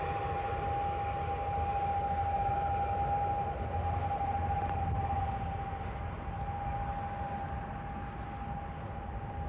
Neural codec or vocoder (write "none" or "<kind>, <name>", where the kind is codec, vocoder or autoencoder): none